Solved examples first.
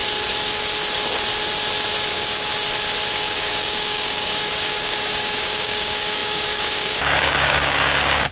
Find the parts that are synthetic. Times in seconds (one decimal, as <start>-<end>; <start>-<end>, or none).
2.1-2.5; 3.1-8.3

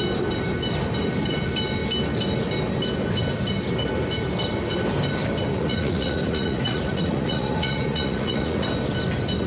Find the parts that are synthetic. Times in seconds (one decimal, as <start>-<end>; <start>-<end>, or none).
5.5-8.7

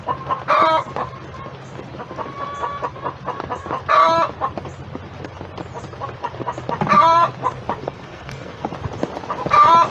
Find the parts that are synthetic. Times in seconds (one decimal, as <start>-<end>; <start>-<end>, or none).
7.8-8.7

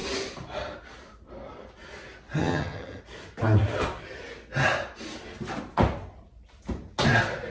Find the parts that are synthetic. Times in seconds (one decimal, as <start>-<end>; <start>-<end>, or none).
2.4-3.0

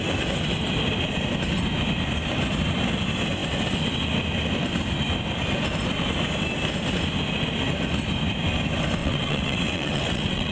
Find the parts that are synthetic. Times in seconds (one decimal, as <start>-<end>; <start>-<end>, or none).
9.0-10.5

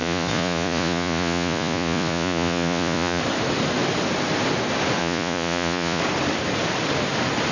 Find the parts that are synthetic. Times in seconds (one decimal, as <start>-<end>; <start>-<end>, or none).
0.0-3.2; 5.0-6.0